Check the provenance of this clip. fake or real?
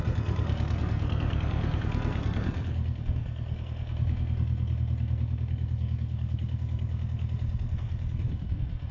fake